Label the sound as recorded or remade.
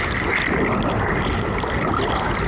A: recorded